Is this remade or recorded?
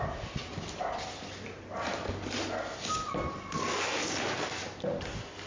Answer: recorded